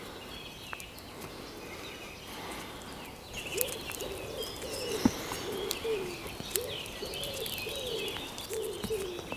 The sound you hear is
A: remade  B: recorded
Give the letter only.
B